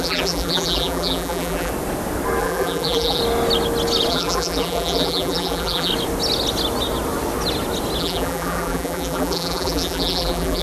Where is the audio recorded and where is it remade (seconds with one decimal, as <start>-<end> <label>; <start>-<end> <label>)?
0.0-1.7 remade; 1.7-2.4 recorded; 2.4-3.2 remade; 3.2-4.1 recorded; 4.1-5.9 remade; 5.9-8.0 recorded; 8.0-10.6 remade